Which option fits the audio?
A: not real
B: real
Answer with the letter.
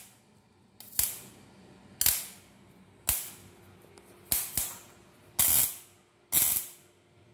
B